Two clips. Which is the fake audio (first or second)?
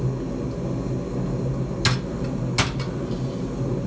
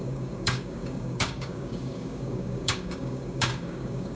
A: second